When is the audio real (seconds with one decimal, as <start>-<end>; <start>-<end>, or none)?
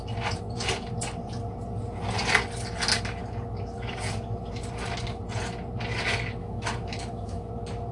0.0-6.4; 7.5-7.9